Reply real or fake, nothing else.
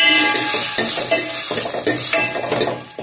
real